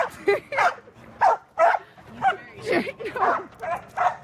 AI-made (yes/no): no